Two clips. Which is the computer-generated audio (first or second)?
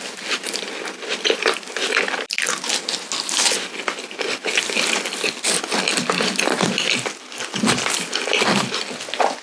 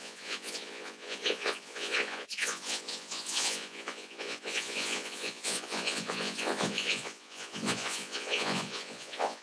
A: second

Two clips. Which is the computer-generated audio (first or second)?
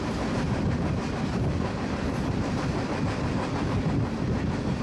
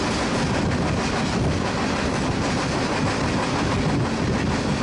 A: first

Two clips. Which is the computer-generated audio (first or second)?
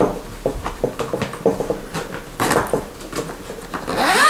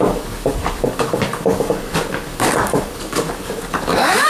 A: second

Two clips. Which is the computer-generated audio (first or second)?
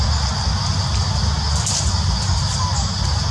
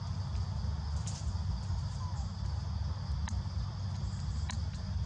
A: first